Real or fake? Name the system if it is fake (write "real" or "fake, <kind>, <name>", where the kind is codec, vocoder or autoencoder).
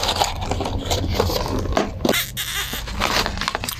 real